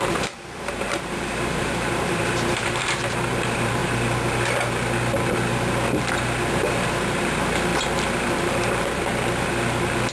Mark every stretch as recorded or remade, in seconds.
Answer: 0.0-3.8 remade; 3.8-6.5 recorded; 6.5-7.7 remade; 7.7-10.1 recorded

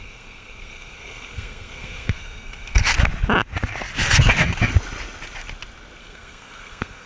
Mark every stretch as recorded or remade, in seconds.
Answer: 0.0-2.9 remade; 2.9-6.0 recorded; 6.0-7.1 remade

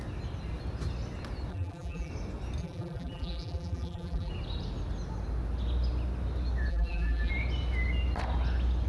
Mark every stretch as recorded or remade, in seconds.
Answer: 0.0-1.5 recorded; 1.5-2.1 remade; 2.1-2.6 recorded; 2.6-4.3 remade; 4.3-6.7 recorded; 6.7-7.3 remade; 7.3-8.9 recorded

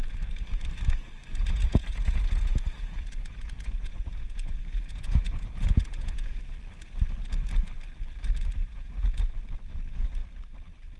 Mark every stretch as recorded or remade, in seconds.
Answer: 0.0-1.3 recorded; 1.3-6.4 remade; 6.4-8.6 recorded; 8.6-9.3 remade; 9.3-11.0 recorded

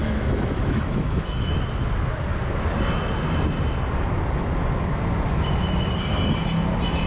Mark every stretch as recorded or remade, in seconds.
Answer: 0.0-1.6 remade; 1.6-7.1 recorded